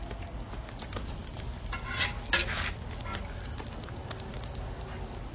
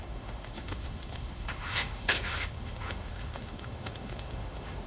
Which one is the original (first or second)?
first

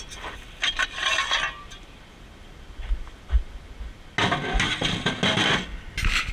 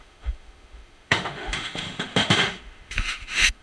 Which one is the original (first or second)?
first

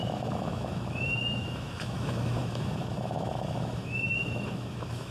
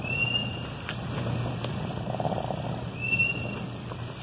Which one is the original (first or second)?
second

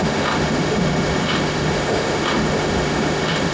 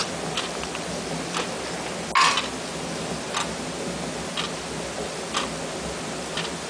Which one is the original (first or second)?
second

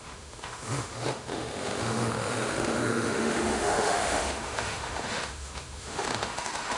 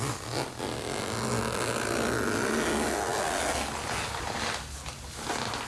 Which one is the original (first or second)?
second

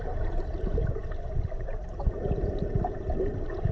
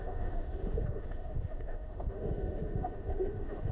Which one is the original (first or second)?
first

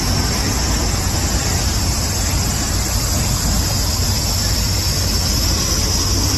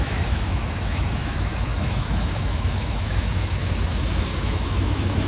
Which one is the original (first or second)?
first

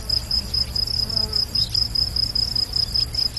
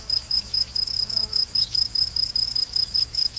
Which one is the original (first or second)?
first